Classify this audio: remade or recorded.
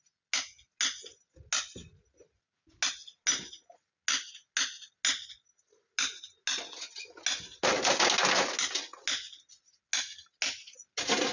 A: recorded